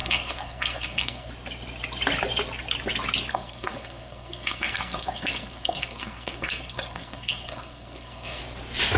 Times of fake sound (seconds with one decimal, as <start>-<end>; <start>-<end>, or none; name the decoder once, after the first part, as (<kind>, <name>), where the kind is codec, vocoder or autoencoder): 0.0-1.3 (codec, SNAC); 3.3-8.4